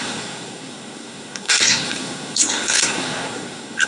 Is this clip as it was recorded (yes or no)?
no